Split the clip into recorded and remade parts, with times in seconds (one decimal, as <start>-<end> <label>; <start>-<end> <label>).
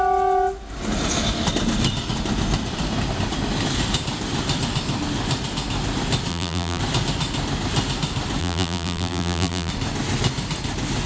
0.0-6.3 recorded; 6.3-6.8 remade; 6.8-8.4 recorded; 8.4-9.7 remade; 9.7-11.1 recorded